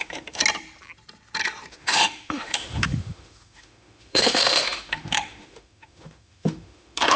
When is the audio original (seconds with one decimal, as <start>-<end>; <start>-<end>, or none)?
0.4-1.7